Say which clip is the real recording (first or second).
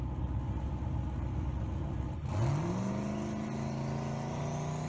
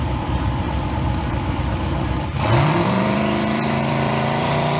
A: first